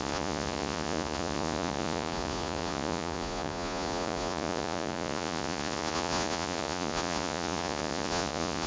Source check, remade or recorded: remade